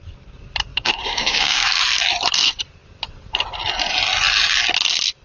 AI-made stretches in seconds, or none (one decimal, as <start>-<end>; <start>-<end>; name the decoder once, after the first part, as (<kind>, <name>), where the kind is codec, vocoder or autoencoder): 0.7-1.8 (codec, DAC)